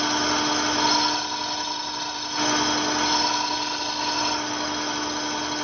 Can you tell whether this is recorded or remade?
recorded